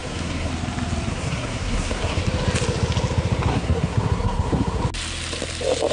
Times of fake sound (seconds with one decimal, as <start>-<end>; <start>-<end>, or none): 0.0-0.5; 1.1-2.2; 3.5-4.8